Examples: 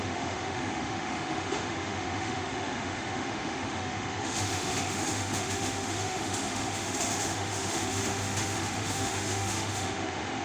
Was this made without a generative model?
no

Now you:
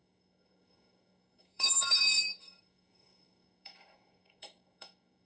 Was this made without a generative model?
no